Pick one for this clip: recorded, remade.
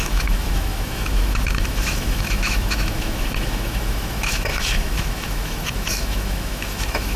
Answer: remade